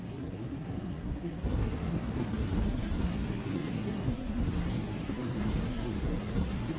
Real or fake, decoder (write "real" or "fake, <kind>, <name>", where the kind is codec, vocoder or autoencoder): fake, codec, SNAC